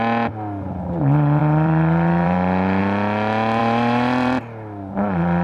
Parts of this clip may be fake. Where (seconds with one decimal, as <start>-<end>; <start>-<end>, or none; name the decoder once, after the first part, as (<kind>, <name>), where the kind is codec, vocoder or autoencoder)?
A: 1.4-2.8 (vocoder, BigVGAN v2); 3.6-4.4